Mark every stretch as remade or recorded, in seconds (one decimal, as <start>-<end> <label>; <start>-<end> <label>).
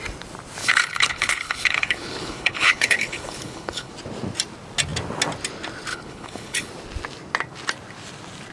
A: 0.0-0.6 recorded; 0.6-3.9 remade; 3.9-5.9 recorded; 5.9-6.7 remade; 6.7-8.5 recorded